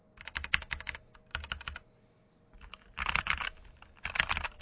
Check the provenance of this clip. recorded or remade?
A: recorded